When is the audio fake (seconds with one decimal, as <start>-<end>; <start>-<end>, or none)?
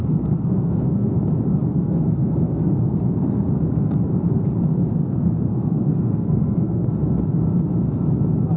0.0-1.2; 1.7-3.9; 4.7-6.9